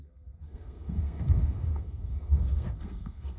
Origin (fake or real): fake